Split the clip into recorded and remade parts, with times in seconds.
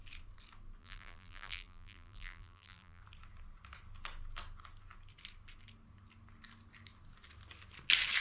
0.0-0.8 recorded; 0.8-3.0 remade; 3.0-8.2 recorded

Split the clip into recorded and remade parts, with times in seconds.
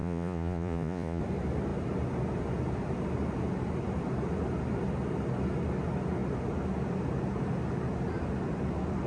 0.0-1.2 remade; 1.2-9.1 recorded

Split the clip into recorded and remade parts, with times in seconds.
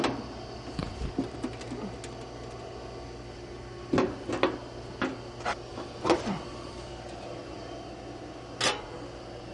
0.0-5.7 recorded; 5.7-6.9 remade; 6.9-9.5 recorded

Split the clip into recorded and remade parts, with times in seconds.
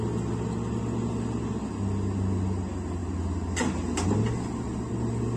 0.0-5.4 recorded